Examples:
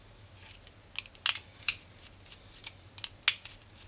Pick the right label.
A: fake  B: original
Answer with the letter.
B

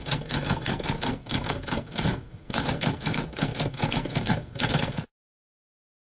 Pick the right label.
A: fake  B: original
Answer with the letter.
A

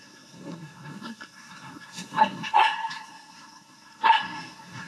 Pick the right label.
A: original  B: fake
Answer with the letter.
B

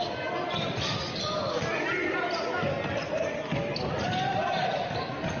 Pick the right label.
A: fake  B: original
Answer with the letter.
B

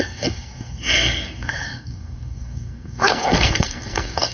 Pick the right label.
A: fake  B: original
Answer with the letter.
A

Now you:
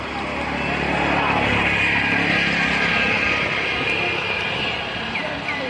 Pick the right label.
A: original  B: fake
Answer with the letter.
A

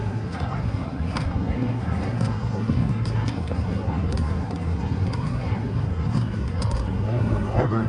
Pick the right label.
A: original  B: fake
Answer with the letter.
B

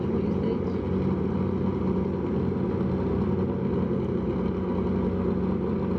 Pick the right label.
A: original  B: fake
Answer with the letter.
A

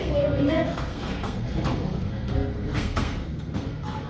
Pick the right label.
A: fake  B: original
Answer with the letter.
A